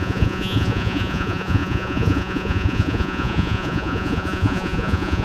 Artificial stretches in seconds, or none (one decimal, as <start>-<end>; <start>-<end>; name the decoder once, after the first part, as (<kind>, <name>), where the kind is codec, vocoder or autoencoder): 0.0-5.2 (vocoder, Vocos)